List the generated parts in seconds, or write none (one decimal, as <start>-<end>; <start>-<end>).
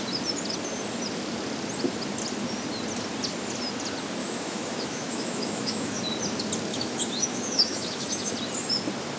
4.2-6.0; 6.7-8.3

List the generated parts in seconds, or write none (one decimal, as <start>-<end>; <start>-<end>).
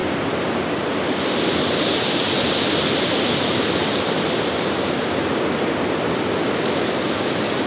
none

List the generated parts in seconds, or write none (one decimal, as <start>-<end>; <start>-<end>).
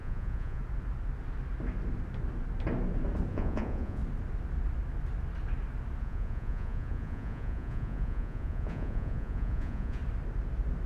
0.0-0.6; 3.3-4.0; 6.0-10.0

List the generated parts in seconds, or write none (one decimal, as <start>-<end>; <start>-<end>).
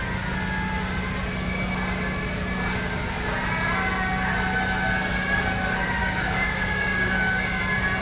6.0-7.6